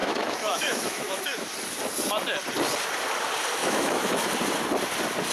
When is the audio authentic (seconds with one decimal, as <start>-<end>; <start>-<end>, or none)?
1.5-3.6; 4.3-5.3